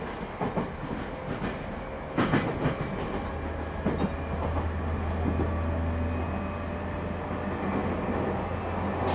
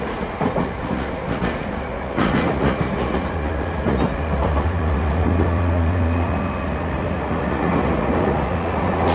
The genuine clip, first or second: first